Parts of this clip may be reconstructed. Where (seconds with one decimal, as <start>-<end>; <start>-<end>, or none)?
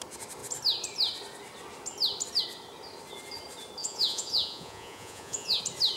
3.8-5.6